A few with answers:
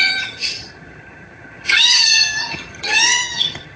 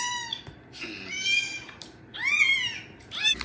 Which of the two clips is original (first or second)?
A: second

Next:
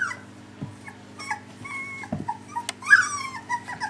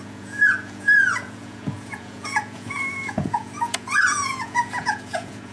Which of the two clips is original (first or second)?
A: first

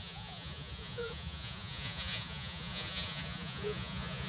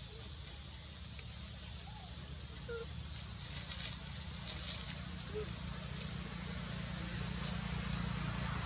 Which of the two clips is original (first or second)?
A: second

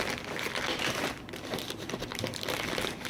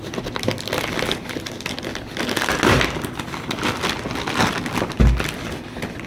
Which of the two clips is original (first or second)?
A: second